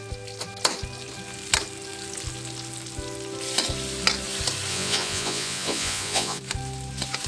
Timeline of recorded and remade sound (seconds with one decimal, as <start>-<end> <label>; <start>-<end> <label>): 0.0-4.7 recorded; 4.7-6.4 remade; 6.4-7.3 recorded